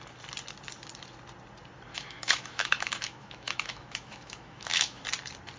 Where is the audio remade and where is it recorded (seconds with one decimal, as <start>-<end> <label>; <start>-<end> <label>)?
0.0-1.9 recorded; 1.9-5.0 remade; 5.0-5.6 recorded